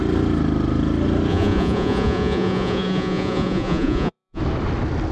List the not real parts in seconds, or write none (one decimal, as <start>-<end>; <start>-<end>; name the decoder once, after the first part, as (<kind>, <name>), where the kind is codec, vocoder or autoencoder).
1.3-4.4 (vocoder, Vocos)